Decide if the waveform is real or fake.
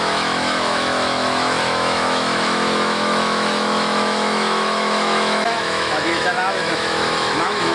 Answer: fake